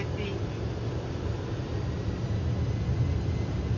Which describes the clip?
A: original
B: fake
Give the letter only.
A